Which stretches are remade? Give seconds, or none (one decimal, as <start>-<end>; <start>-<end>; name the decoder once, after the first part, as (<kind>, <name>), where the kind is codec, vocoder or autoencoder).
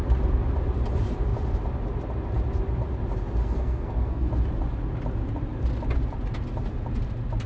3.4-4.3 (codec, SNAC)